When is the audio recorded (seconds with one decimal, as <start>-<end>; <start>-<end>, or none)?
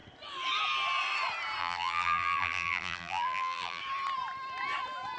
0.0-1.6; 3.8-5.2